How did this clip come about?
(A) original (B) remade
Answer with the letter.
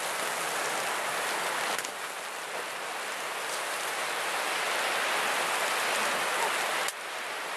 A